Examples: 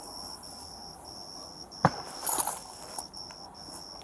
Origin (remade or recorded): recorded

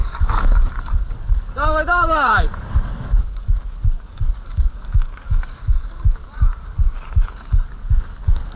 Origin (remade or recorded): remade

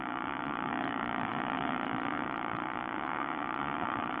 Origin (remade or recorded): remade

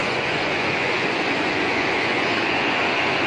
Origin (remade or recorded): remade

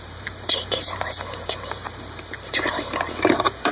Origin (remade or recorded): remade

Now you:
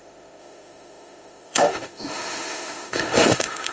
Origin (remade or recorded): remade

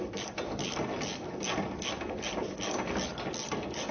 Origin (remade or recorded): recorded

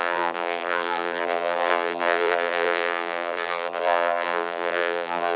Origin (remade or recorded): remade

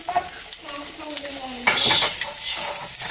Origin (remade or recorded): remade